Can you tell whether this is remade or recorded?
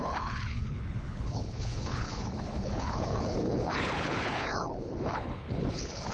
remade